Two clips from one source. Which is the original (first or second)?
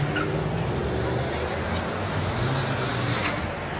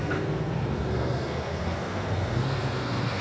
first